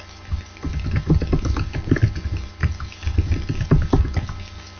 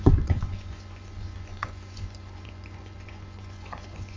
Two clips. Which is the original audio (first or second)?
first